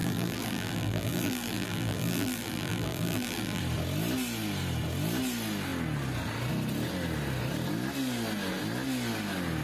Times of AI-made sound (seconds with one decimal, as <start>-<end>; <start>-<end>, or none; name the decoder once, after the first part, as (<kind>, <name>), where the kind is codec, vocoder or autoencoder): 0.0-3.6 (vocoder, BigVGAN v2)